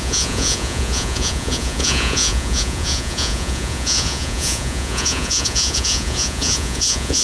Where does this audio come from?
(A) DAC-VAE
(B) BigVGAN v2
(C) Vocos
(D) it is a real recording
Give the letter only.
C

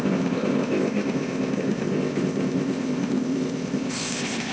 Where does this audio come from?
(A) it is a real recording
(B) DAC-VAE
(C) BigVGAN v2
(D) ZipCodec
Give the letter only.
D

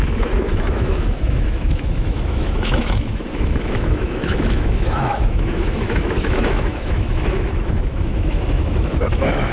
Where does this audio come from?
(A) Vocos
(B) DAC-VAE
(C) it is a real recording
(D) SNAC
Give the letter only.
B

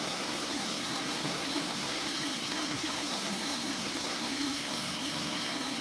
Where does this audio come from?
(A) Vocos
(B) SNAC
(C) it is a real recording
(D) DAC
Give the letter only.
B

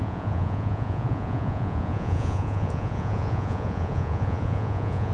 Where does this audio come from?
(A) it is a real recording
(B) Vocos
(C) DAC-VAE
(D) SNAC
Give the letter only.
B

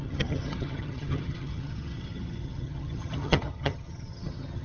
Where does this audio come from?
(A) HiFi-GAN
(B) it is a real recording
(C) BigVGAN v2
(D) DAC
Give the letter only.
A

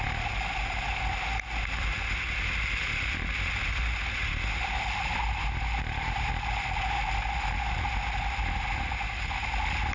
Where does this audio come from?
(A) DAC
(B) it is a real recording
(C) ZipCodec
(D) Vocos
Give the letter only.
B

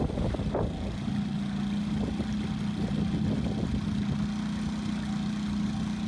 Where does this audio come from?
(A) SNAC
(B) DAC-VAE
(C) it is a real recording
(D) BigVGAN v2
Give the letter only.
C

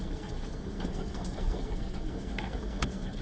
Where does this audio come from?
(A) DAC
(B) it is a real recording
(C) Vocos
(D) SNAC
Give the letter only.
D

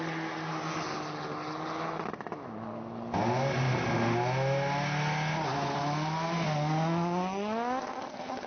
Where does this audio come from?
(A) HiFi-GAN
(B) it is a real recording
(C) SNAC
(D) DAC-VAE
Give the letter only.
B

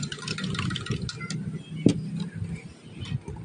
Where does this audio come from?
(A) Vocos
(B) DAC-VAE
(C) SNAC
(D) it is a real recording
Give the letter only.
D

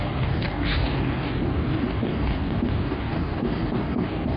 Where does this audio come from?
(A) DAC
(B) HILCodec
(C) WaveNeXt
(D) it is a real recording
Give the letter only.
A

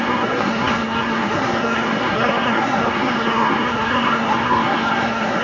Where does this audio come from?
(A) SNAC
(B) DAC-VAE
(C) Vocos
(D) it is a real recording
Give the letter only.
A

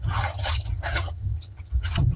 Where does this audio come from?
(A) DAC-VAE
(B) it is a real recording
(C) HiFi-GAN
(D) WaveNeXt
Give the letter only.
C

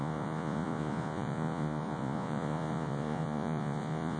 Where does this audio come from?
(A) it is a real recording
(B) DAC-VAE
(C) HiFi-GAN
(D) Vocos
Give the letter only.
D